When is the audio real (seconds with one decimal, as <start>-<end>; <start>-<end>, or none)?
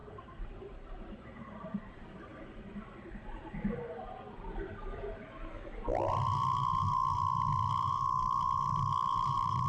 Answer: 1.9-9.0